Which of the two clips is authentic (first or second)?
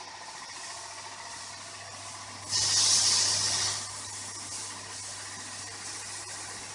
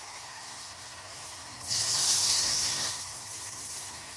first